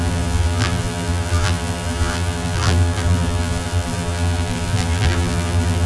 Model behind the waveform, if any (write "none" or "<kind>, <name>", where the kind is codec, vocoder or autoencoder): vocoder, BigVGAN v2